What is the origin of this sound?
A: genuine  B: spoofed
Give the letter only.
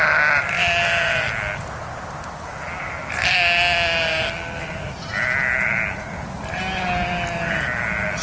A